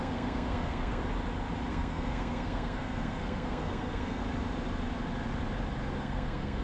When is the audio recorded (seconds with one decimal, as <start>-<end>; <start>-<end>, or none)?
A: 1.0-1.7; 4.2-6.0